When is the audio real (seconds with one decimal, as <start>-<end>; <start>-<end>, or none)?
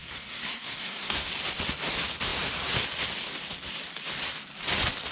1.3-5.1